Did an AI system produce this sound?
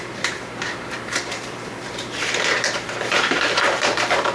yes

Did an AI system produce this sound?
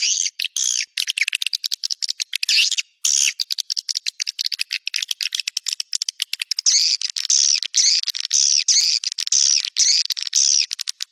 no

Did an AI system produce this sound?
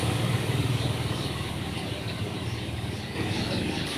yes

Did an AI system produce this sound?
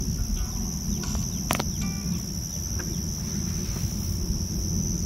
no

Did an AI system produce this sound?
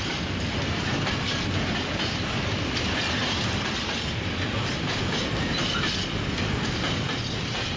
no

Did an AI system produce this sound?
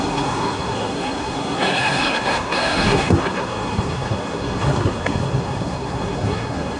yes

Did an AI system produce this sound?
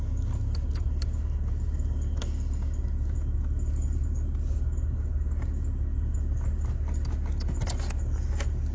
no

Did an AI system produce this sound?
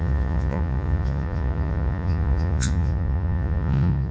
yes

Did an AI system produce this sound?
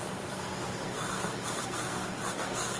yes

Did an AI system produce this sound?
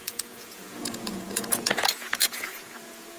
yes